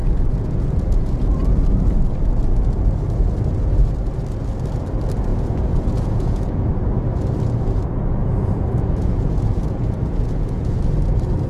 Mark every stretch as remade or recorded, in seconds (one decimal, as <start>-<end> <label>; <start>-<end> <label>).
0.0-1.2 remade; 1.2-5.3 recorded; 5.3-6.7 remade; 6.7-8.2 recorded; 8.2-10.8 remade; 10.8-11.5 recorded